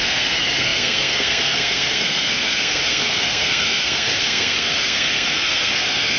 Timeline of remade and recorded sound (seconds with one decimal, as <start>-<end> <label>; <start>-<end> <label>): 0.0-6.2 remade